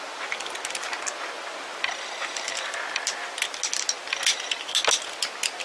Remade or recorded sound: recorded